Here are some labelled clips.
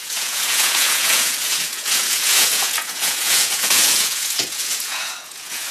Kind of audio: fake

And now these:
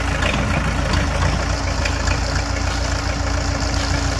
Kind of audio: real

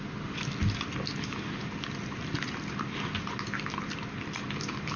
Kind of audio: real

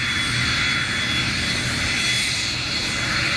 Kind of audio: real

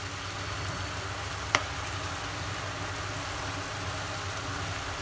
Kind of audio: real